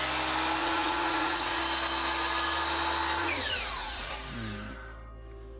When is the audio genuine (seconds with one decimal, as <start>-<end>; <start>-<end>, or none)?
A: 0.0-0.6; 1.6-3.2; 4.1-5.6